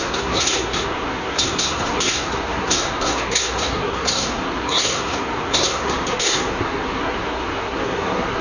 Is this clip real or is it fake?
fake